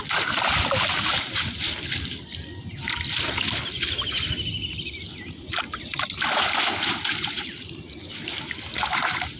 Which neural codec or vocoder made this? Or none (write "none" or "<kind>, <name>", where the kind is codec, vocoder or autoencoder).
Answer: none